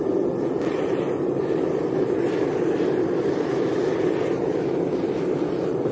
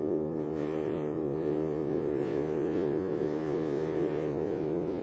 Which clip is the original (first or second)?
first